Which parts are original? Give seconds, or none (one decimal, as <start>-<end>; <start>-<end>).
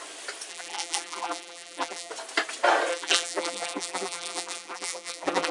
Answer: 0.0-0.5; 2.1-2.9